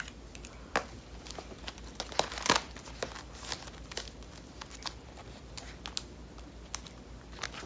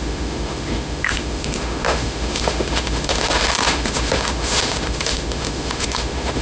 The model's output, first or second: second